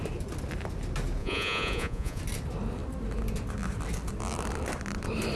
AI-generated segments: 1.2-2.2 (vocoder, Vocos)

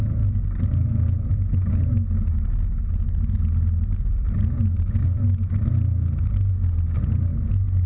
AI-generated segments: none

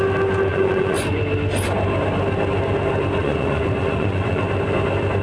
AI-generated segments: 0.5-1.2 (vocoder, Vocos); 3.2-4.4

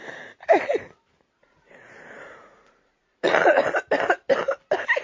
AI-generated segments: 1.4-3.6 (vocoder, Vocos)

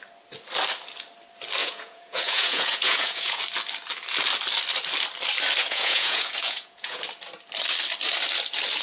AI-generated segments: 1.6-3.4 (vocoder, Vocos); 5.6-7.0

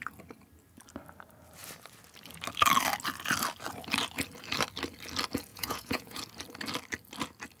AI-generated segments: 5.5-6.2 (vocoder, Vocos)